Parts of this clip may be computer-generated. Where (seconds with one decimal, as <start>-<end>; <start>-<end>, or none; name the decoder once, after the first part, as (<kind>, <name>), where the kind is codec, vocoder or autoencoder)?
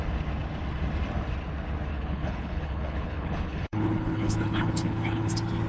1.9-5.3 (codec, HILCodec)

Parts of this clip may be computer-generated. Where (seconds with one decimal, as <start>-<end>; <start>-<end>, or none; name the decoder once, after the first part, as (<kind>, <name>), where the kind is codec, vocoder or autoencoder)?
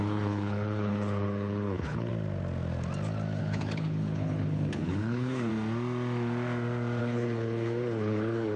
0.0-2.1 (codec, HILCodec); 3.4-5.5; 7.0-8.6